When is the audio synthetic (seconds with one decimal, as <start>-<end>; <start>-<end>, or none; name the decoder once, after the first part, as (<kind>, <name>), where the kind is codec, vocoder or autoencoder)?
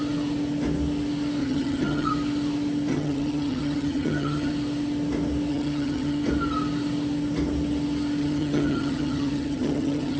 1.4-2.1 (vocoder, HiFi-GAN); 2.9-4.5; 5.5-6.2; 8.2-10.2